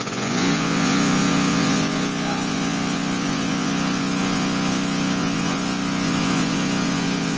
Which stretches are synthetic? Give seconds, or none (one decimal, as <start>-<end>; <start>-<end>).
0.0-7.4